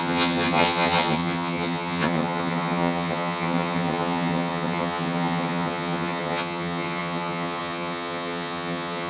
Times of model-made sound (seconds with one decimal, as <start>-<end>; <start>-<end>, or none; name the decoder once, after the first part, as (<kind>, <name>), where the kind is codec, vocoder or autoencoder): 0.0-9.1 (vocoder, HiFi-GAN)